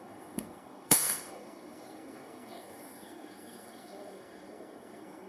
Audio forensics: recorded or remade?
remade